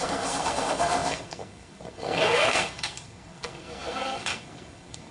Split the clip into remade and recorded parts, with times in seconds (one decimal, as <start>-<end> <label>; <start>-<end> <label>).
0.0-5.1 remade

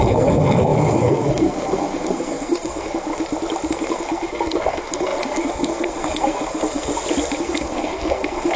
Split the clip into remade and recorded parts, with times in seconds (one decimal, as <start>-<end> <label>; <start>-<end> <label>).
0.0-3.1 remade; 3.1-3.7 recorded; 3.7-6.9 remade; 6.9-7.4 recorded; 7.4-8.6 remade

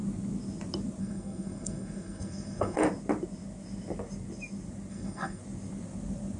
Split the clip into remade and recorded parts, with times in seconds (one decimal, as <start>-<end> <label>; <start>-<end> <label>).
0.0-1.0 recorded; 1.0-2.8 remade; 2.8-4.9 recorded; 4.9-5.4 remade; 5.4-6.4 recorded

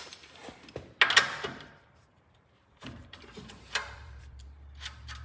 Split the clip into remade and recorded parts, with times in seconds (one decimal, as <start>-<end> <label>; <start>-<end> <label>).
0.0-0.4 remade; 0.4-1.5 recorded; 1.5-5.2 remade

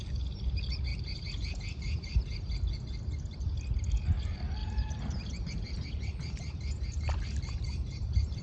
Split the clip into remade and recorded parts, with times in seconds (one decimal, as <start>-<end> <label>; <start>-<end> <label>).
0.0-0.9 recorded; 0.9-2.5 remade; 2.5-4.6 recorded; 4.6-8.4 remade

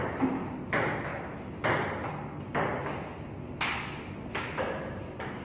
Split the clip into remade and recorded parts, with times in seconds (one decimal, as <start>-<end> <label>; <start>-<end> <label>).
0.0-5.4 recorded

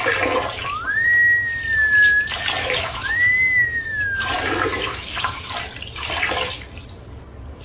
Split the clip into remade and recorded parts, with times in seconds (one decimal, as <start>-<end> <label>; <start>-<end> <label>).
0.0-2.6 recorded; 2.6-4.2 remade; 4.2-4.9 recorded; 4.9-5.5 remade; 5.5-7.6 recorded

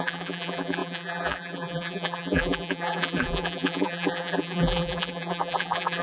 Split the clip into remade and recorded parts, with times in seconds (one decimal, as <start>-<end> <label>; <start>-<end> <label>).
0.0-6.0 remade